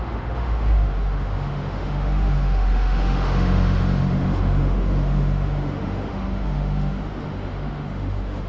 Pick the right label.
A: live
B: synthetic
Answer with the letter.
B